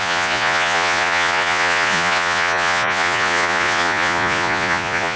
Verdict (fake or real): fake